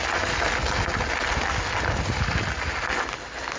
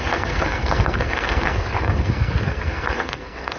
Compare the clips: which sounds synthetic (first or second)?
second